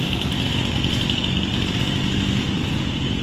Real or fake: real